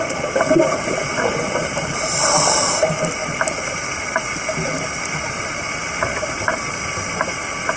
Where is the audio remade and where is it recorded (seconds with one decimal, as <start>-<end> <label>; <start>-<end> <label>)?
0.0-7.8 recorded